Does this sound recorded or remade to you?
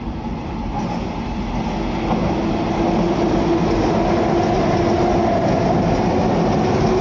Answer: recorded